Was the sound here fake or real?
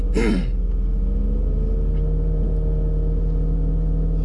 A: real